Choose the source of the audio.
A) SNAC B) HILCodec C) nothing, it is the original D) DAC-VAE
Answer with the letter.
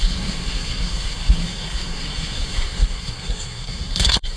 A